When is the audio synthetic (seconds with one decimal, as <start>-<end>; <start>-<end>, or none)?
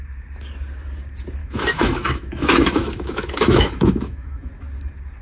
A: 1.4-4.5